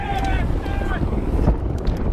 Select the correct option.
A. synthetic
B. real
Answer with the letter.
B